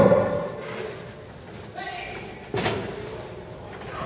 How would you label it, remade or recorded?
recorded